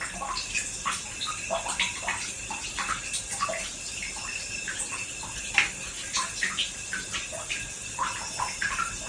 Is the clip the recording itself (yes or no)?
yes